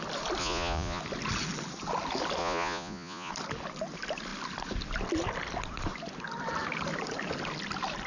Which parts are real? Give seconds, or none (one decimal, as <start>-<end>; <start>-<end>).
0.0-0.4; 1.0-2.4; 3.3-8.1